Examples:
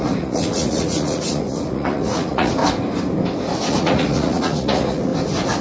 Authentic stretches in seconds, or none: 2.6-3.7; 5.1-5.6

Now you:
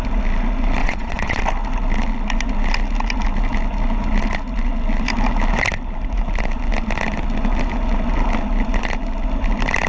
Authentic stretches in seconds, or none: 0.0-0.8; 1.4-9.9

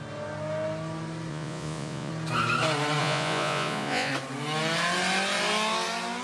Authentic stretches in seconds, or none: 0.0-1.3; 2.1-3.0; 4.1-6.2

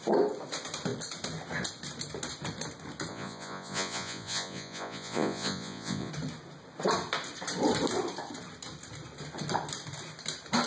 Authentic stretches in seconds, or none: 0.0-3.1; 6.1-10.7

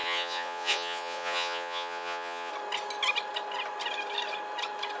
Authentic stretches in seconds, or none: 2.5-5.0

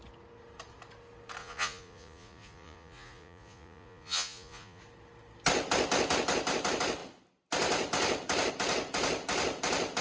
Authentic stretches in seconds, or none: 0.0-1.4; 4.8-10.0